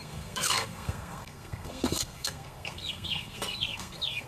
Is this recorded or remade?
remade